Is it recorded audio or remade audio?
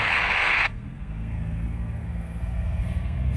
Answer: remade